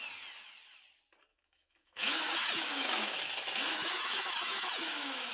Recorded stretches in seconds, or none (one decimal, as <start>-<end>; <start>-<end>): 0.0-1.3; 3.2-3.7

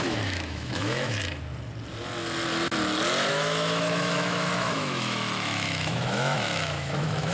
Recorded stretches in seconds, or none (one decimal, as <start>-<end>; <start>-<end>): 1.2-3.3

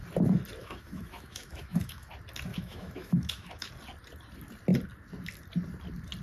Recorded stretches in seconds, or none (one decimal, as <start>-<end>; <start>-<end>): 0.0-0.6; 2.1-2.5; 3.7-6.2